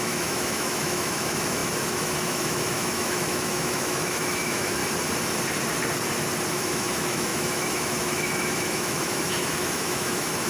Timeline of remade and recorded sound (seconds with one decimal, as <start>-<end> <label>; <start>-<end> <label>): 0.0-4.8 remade; 4.8-6.5 recorded; 6.5-10.5 remade